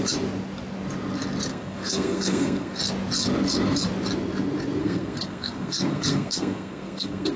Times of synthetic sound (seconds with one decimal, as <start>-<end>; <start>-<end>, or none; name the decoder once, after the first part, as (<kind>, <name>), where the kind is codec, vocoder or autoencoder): 1.5-2.8 (codec, SNAC); 4.8-7.4